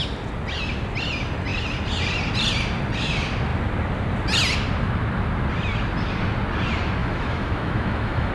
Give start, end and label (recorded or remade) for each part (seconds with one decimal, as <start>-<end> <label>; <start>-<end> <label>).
0.0-7.0 recorded; 7.0-8.3 remade